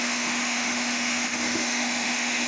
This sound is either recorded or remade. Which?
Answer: remade